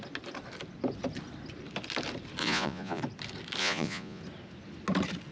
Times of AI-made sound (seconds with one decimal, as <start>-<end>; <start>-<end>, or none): 2.4-3.0; 3.6-4.2